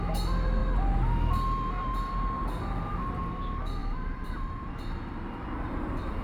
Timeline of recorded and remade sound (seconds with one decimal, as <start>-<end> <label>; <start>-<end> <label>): 0.0-3.8 recorded; 3.8-4.7 remade; 4.7-6.2 recorded